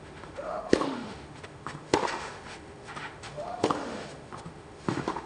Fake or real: fake